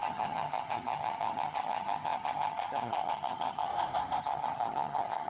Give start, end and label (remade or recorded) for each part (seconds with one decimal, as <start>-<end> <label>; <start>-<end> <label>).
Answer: 0.0-3.7 remade; 3.7-4.2 recorded; 4.2-5.3 remade